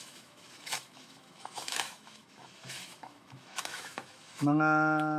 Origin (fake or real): fake